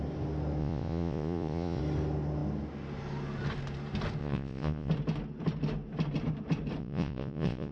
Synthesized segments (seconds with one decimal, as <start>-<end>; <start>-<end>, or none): 0.6-1.8; 4.2-4.9; 6.8-7.7